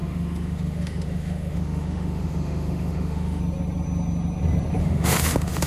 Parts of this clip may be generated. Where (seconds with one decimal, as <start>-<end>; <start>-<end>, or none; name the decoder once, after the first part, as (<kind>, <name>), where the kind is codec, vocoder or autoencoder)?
0.0-3.4 (autoencoder, DAC-VAE); 4.8-5.7